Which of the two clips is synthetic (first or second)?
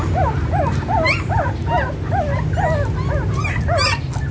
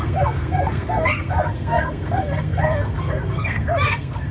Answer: second